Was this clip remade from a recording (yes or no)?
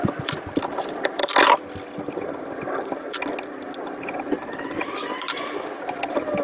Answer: yes